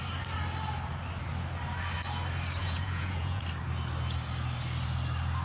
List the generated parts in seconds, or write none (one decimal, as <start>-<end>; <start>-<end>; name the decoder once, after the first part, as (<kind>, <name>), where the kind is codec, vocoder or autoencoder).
2.6-3.4 (vocoder, Vocos)